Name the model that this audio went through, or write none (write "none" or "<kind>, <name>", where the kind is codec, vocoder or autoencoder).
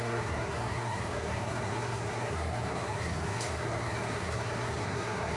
codec, SNAC